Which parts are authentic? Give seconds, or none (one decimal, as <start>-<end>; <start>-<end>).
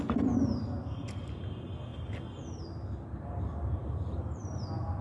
0.0-3.8; 4.4-5.0